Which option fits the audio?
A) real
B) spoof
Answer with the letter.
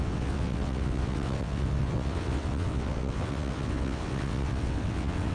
B